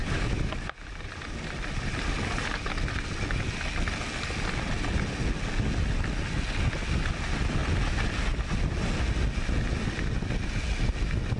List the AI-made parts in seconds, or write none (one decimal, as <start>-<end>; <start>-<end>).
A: 0.0-2.5